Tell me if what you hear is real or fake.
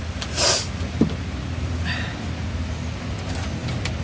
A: real